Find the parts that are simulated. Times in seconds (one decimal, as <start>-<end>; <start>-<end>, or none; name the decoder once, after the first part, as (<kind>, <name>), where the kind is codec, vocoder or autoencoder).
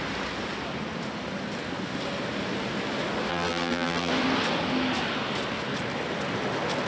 3.3-4.1 (vocoder, BigVGAN v2)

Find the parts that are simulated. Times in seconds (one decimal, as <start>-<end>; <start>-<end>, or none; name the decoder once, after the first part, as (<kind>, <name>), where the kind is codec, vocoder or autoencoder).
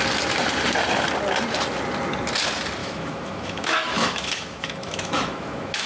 2.8-5.9 (autoencoder, DAC-VAE)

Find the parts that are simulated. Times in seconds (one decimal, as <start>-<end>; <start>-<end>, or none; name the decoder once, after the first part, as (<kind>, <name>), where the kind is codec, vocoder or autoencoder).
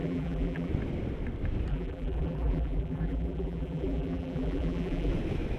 0.0-0.7 (vocoder, BigVGAN v2); 1.7-5.1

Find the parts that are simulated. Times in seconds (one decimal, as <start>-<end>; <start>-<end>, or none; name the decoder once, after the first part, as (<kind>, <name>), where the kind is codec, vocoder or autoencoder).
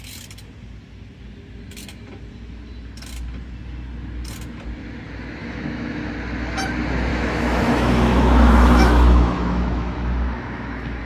5.4-6.1 (autoencoder, DAC-VAE); 7.1-11.0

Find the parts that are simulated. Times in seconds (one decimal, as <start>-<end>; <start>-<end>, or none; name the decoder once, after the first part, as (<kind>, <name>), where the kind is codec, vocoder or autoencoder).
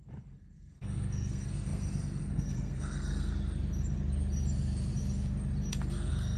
0.0-3.3 (codec, SNAC); 5.7-6.4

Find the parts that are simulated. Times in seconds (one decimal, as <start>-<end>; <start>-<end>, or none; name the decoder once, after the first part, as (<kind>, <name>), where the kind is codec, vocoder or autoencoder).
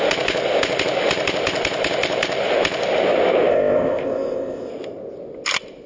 3.5-4.7 (codec, ZipCodec)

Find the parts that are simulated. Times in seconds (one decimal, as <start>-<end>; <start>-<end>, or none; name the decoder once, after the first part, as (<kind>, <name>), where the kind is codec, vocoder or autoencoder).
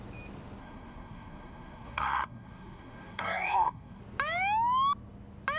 0.6-4.0 (codec, SNAC)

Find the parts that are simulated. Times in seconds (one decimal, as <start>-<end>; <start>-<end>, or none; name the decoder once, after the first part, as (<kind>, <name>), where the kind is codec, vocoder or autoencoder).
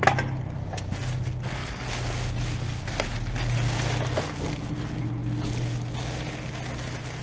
none